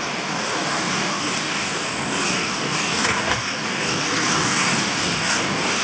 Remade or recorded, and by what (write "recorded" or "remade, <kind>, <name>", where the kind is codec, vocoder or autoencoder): remade, codec, DAC